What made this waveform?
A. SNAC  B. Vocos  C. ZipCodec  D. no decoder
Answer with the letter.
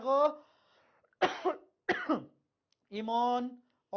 D